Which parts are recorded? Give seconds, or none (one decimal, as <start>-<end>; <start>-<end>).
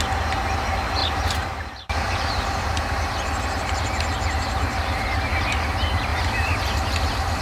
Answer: 0.0-1.0; 5.4-6.1